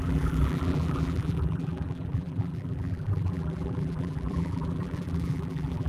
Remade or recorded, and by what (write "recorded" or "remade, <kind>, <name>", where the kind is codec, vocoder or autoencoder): remade, vocoder, BigVGAN v2